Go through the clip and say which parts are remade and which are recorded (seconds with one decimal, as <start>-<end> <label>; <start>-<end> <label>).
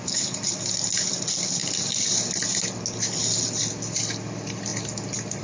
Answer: 0.0-5.4 recorded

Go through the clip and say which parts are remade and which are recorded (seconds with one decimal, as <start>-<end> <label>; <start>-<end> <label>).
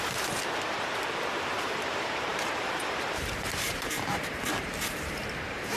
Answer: 0.0-5.8 remade